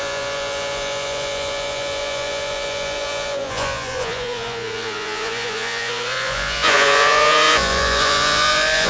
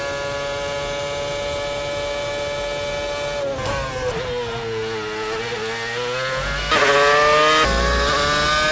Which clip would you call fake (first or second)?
first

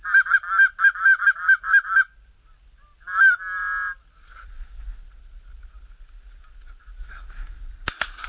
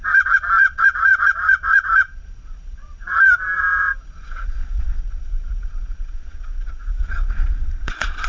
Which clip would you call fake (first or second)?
second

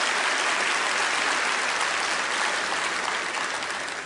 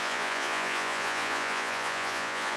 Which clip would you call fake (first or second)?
second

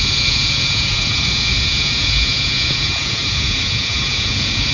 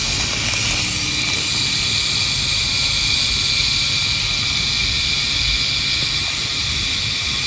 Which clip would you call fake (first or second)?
first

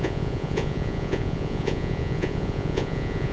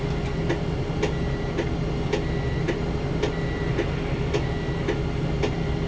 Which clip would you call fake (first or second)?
first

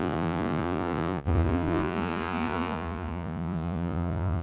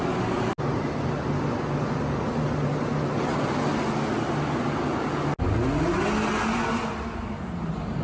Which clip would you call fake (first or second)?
first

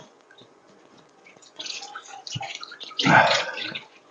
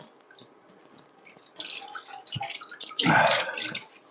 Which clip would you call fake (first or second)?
first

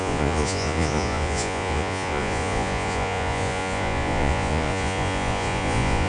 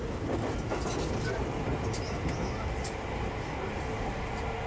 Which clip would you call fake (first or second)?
first